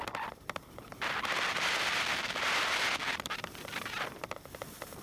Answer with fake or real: fake